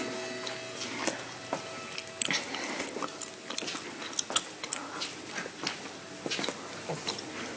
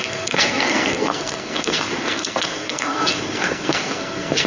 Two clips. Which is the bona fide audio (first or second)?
first